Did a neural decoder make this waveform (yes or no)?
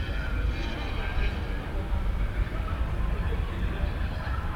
yes